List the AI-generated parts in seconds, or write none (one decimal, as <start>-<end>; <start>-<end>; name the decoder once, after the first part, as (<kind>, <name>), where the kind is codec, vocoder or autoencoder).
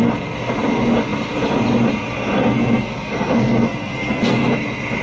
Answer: 2.4-4.5 (codec, SNAC)